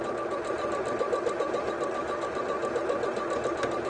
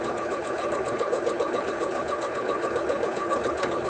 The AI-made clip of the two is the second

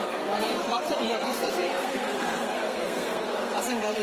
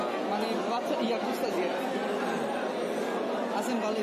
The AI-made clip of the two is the first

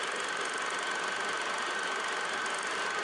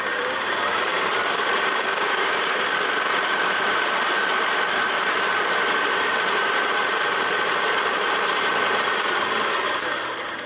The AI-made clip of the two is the second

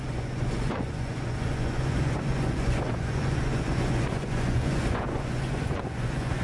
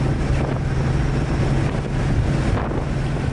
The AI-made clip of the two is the first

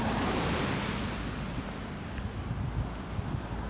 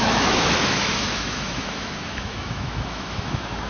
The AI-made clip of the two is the second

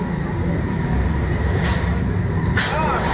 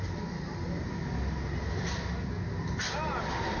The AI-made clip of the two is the first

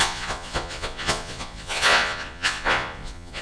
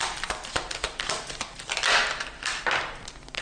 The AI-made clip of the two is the first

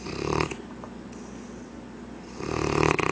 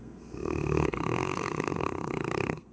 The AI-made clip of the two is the second